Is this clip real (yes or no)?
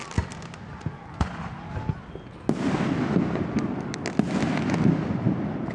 yes